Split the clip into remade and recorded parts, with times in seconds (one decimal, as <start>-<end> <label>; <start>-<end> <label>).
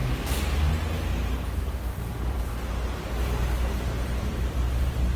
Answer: 0.0-2.5 remade; 2.5-3.2 recorded; 3.2-5.2 remade